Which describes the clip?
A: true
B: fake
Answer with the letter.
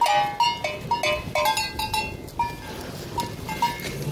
A